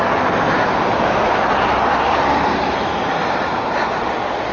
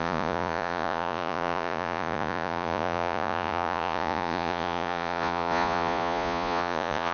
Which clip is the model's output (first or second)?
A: second